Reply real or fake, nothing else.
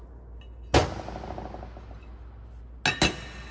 real